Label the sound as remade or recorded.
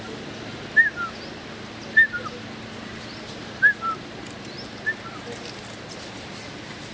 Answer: recorded